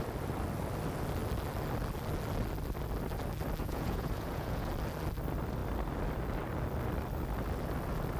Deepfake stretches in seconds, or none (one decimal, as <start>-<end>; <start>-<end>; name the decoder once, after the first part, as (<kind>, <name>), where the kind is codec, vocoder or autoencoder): 3.6-4.7 (vocoder, Vocos)